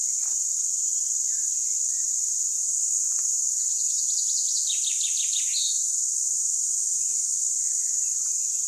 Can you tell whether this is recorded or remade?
recorded